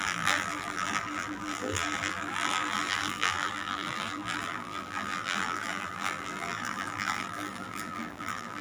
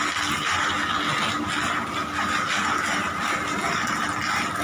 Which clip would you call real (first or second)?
second